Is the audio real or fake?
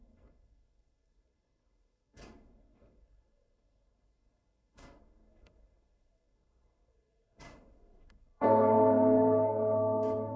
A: fake